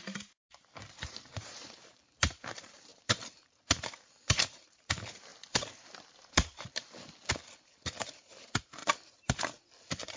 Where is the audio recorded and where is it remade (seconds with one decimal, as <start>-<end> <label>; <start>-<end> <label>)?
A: 0.0-5.3 remade; 5.3-7.9 recorded; 7.9-8.8 remade; 8.8-10.2 recorded